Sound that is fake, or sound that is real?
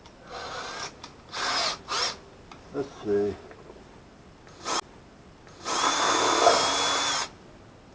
real